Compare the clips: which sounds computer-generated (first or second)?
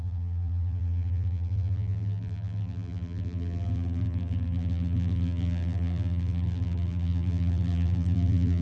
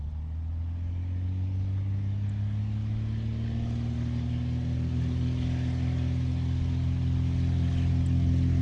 first